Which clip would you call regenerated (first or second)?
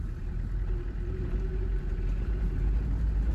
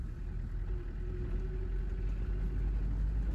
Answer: first